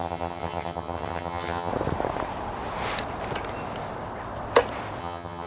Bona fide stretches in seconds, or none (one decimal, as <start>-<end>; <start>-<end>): 1.7-5.0